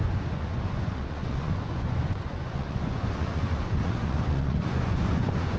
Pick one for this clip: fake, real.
fake